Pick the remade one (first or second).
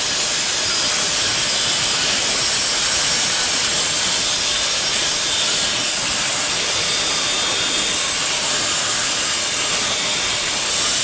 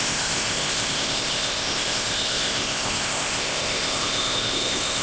second